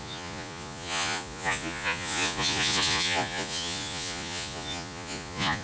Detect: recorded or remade remade